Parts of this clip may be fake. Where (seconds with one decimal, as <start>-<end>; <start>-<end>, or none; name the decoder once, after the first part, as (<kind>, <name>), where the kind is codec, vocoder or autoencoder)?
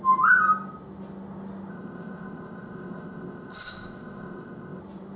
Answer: 1.7-4.8 (codec, ZipCodec)